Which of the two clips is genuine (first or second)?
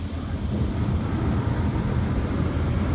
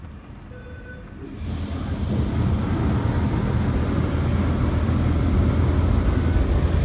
second